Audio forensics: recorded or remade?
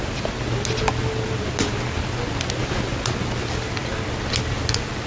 recorded